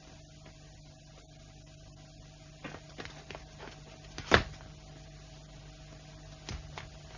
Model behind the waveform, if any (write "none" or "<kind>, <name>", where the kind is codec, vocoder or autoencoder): none